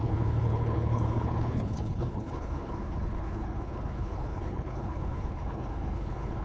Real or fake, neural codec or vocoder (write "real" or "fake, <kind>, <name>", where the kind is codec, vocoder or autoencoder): fake, codec, HILCodec